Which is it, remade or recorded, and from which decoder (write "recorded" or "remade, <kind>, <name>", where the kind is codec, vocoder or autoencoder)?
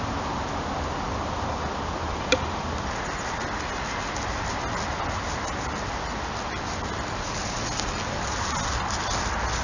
recorded